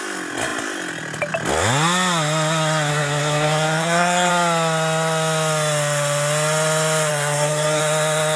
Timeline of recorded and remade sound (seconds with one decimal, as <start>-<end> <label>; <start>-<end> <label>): 0.0-2.9 recorded; 2.9-4.3 remade; 4.3-7.1 recorded; 7.1-7.8 remade; 7.8-8.4 recorded